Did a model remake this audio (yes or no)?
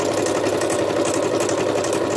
no